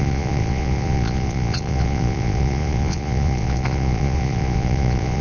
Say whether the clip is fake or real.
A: fake